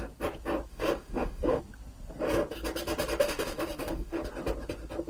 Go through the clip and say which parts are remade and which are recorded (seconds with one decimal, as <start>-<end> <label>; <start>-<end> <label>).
0.0-0.7 recorded; 0.7-1.6 remade; 1.6-3.2 recorded; 3.2-4.2 remade; 4.2-5.1 recorded